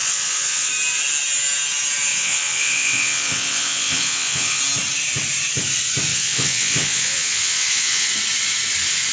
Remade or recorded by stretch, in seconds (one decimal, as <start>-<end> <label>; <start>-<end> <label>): 0.0-0.7 remade; 0.7-2.1 recorded; 2.1-4.6 remade; 4.6-6.1 recorded; 6.1-8.1 remade; 8.1-9.1 recorded